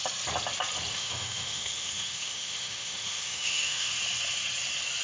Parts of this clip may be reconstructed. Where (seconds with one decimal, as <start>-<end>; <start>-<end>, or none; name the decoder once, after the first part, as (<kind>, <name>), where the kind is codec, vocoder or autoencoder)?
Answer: 0.9-3.9 (autoencoder, DAC-VAE)